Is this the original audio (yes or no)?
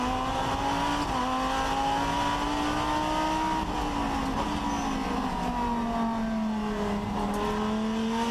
yes